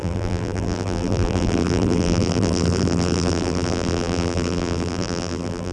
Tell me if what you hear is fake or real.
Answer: fake